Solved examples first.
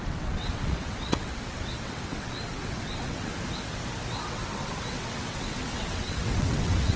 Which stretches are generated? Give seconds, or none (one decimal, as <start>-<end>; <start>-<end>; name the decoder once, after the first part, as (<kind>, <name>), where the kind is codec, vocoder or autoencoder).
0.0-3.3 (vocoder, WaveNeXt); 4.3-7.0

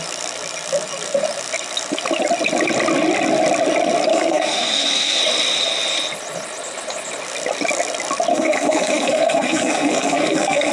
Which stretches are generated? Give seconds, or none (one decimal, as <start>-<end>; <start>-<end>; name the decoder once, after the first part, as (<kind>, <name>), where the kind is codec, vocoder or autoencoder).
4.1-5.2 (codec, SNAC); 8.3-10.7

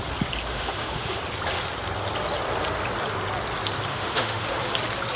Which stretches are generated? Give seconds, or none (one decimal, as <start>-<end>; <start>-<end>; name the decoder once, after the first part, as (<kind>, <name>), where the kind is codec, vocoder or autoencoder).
0.5-1.2 (autoencoder, DAC-VAE); 3.9-4.6

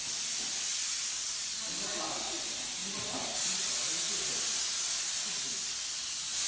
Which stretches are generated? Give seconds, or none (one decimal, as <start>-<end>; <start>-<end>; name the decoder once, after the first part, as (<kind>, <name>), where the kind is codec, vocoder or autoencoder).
0.7-2.0 (vocoder, BigVGAN v2); 2.8-3.7

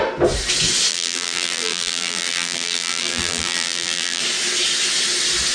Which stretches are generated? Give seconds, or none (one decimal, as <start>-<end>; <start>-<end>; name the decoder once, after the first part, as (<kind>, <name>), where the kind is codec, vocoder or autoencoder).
0.9-4.2 (vocoder, BigVGAN v2)

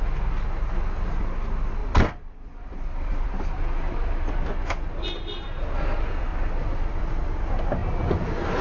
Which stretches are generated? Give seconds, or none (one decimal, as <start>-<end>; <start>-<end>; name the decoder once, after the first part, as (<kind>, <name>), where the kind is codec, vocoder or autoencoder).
1.8-4.5 (vocoder, BigVGAN v2); 6.3-7.0; 7.8-8.6